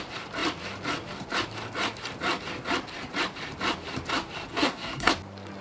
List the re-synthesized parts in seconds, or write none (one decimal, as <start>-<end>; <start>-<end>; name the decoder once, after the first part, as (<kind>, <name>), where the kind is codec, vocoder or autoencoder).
4.5-5.1 (codec, SNAC)